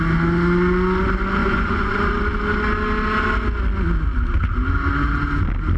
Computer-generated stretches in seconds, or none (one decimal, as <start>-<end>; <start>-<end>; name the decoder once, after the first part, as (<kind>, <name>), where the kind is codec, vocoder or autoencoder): 1.4-2.0 (vocoder, Vocos)